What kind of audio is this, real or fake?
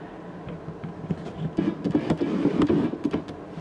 real